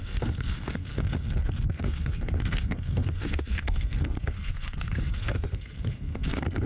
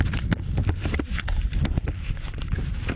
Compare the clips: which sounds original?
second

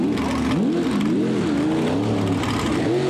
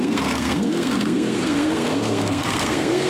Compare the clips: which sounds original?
first